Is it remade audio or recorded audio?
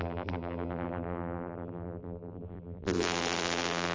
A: remade